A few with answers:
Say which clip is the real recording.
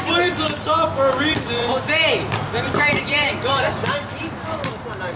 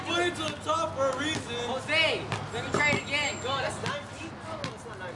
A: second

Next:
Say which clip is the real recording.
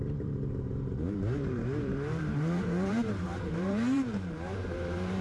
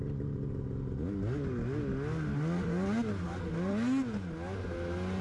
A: second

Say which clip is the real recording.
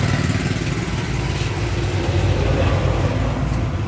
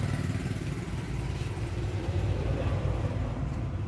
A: first